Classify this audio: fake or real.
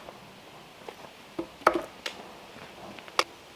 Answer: real